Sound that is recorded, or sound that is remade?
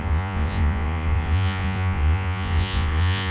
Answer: remade